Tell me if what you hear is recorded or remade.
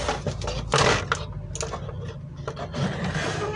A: recorded